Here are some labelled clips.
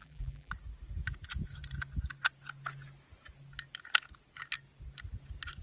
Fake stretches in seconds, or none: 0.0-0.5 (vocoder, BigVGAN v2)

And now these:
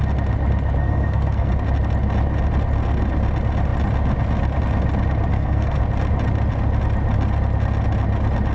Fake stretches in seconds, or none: 0.8-1.5 (codec, SNAC); 5.3-5.8

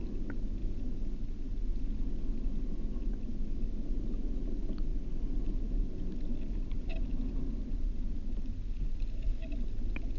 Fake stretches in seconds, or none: none

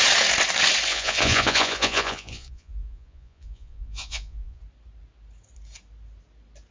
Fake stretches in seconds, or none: 0.9-4.6 (vocoder, Vocos)

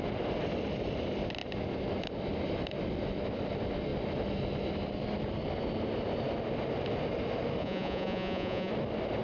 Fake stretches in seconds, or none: 7.6-8.7 (vocoder, Vocos)

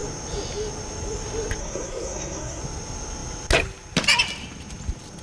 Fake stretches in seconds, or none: 1.6-2.6 (codec, SNAC)